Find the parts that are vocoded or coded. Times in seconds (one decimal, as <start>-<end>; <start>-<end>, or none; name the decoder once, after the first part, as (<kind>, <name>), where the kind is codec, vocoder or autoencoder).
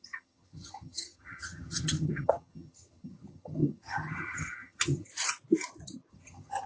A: 0.0-5.1 (vocoder, HiFi-GAN); 6.1-6.7